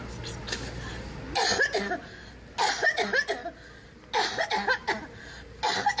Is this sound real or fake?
real